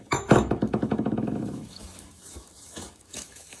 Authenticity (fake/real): fake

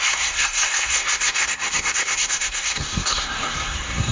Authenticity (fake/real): fake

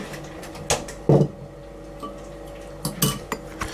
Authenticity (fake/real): real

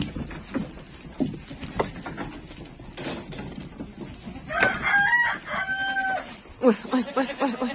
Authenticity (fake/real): real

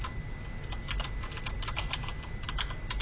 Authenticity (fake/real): real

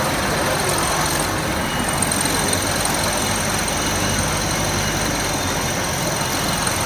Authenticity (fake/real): real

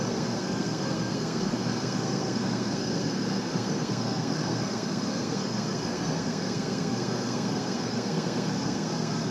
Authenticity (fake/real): fake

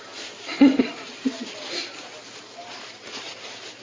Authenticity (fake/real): fake